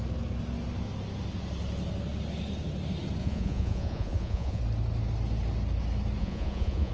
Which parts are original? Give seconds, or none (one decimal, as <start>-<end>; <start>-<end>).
0.0-3.2; 4.6-6.2

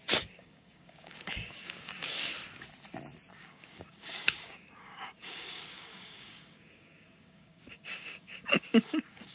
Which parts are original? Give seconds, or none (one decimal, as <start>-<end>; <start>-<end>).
2.3-3.3

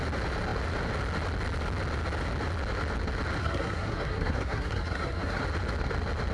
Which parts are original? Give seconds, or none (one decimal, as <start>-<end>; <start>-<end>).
0.0-3.4; 5.4-6.3

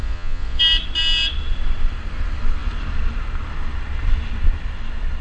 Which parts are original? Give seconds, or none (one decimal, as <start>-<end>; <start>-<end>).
0.6-5.2

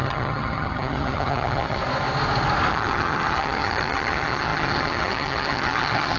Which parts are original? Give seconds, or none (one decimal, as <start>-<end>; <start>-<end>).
1.8-2.7

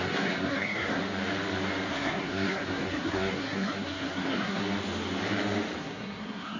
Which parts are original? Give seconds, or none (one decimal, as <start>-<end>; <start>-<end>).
1.0-1.9; 4.6-5.8